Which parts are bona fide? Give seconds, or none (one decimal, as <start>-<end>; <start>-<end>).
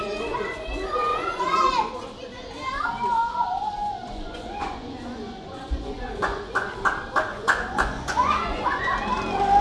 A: 0.0-1.1; 1.7-4.0; 6.7-7.3; 8.9-9.6